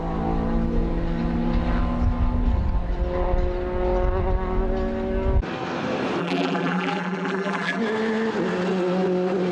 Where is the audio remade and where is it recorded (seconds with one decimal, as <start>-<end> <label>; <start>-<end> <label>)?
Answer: 0.0-6.2 recorded; 6.2-7.8 remade; 7.8-9.5 recorded